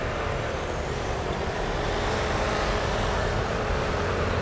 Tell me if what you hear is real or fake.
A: fake